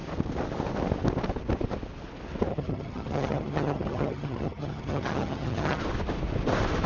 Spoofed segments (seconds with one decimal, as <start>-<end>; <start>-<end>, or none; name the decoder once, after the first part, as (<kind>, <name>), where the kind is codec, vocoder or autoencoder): 2.5-5.8 (vocoder, HiFi-GAN)